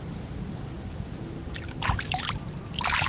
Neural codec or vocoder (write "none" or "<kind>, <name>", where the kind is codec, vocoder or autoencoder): none